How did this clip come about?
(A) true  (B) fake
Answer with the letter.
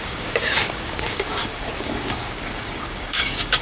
B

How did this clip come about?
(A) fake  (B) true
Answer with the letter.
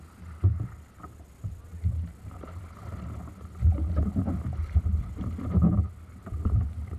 B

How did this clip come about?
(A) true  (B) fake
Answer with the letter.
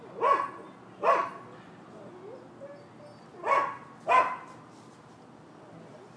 A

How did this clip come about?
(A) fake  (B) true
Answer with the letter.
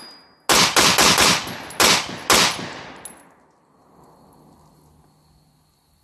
B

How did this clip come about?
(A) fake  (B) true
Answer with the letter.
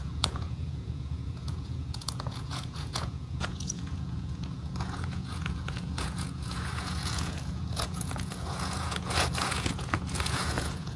A